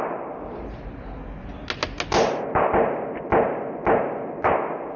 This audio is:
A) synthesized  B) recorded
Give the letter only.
B